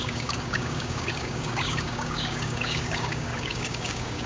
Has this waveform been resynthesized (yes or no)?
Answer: yes